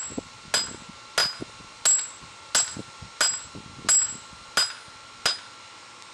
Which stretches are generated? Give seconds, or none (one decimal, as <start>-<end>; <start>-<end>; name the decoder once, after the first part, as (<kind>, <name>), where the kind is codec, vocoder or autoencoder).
none